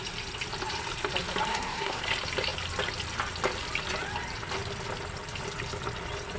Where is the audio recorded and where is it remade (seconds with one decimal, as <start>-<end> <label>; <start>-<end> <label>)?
0.0-1.5 recorded; 1.5-2.0 remade; 2.0-6.4 recorded